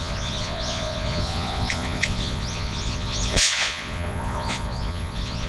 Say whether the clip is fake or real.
fake